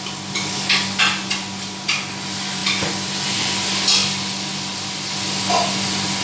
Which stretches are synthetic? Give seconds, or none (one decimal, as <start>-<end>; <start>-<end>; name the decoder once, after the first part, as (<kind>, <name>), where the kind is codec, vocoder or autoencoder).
none